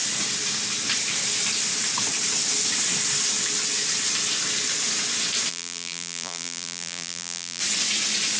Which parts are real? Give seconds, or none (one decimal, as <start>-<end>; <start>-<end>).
0.0-5.5; 7.6-8.4